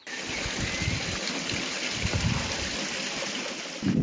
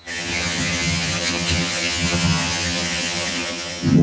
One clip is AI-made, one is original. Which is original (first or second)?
first